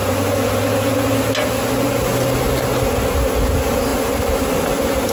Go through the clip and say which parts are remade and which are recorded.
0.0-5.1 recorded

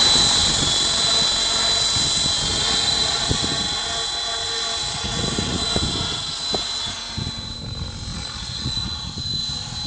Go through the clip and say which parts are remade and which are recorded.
0.0-2.5 recorded; 2.5-3.6 remade; 3.6-4.8 recorded; 4.8-5.6 remade; 5.6-8.1 recorded; 8.1-9.1 remade; 9.1-9.9 recorded

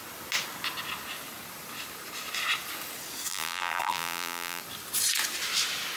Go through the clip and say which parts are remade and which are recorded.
0.0-3.3 recorded; 3.3-4.6 remade; 4.6-6.0 recorded

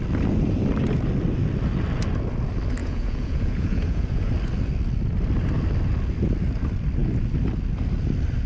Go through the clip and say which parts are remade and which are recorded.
0.0-2.8 recorded; 2.8-4.3 remade; 4.3-8.5 recorded